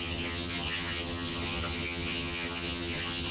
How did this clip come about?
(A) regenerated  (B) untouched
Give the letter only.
A